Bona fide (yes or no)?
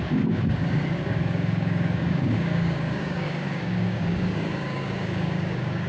no